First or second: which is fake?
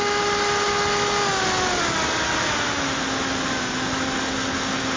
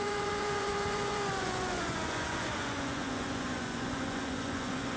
second